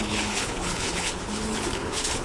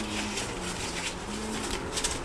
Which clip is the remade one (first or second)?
first